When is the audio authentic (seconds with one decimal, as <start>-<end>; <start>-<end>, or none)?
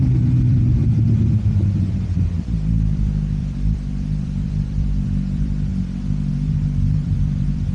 5.7-6.3